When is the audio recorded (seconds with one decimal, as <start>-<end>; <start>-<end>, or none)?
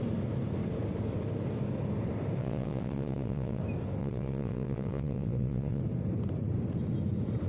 0.0-2.4; 3.6-4.0; 5.8-7.5